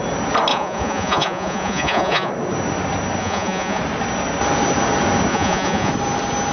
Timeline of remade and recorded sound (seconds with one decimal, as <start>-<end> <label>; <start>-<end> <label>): 0.0-0.5 recorded; 0.5-2.3 remade; 2.3-3.2 recorded; 3.2-3.8 remade; 3.8-5.3 recorded; 5.3-5.9 remade; 5.9-6.5 recorded